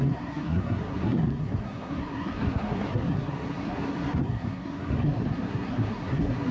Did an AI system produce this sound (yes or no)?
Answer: yes